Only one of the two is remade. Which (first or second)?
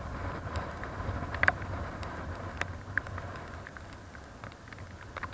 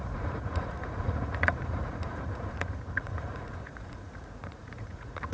second